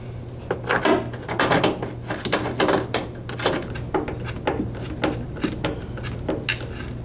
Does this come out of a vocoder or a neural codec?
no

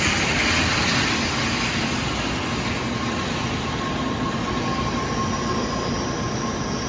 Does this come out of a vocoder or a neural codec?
no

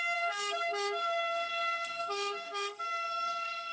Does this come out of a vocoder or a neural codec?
yes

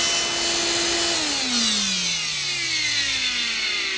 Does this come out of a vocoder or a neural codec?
no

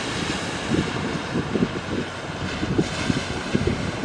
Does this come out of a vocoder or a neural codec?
no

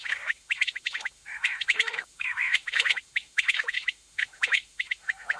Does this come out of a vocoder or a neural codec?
yes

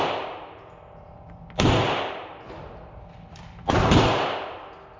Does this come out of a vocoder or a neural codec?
no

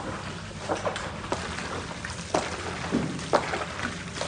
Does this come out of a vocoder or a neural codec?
no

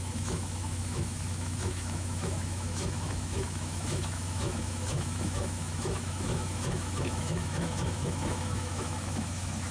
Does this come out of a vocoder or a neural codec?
yes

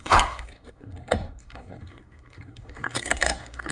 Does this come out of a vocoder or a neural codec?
yes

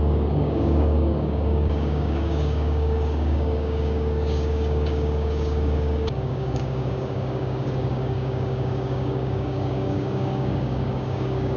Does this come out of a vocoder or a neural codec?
yes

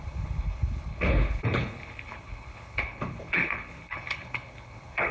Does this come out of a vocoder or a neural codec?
yes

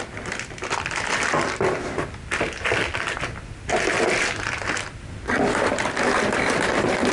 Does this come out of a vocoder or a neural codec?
no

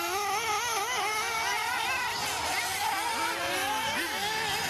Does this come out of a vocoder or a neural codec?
no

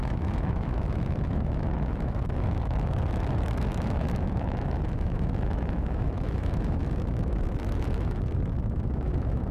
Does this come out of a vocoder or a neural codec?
yes